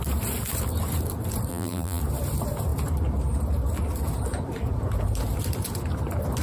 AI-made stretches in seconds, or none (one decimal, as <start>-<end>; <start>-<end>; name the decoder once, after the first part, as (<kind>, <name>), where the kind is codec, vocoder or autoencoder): 1.5-2.0 (vocoder, BigVGAN v2)